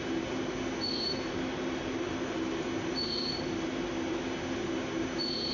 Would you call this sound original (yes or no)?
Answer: yes